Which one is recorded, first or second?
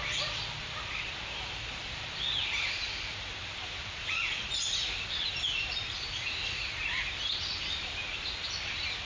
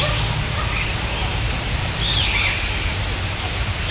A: second